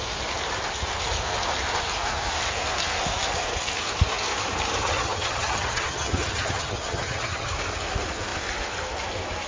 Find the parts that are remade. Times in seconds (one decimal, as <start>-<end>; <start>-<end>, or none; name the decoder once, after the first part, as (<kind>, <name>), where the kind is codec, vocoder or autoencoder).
4.8-7.5 (vocoder, HiFi-GAN)